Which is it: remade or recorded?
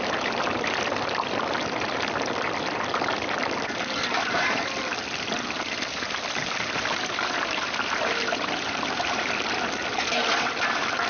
remade